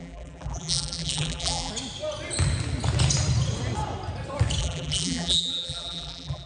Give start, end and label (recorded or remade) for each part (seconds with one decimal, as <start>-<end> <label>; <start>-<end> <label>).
0.0-1.7 remade; 1.7-4.6 recorded; 4.6-6.5 remade